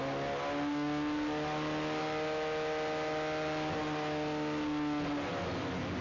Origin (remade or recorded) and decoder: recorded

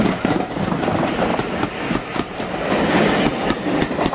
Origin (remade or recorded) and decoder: recorded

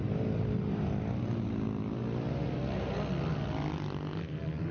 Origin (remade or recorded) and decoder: recorded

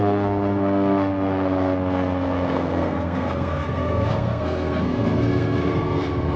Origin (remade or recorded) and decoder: remade, codec, SNAC